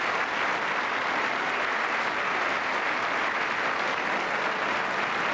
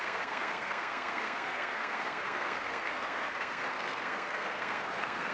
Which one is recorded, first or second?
first